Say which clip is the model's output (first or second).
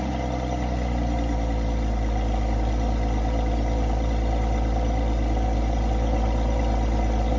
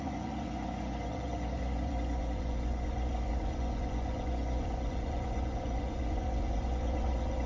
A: second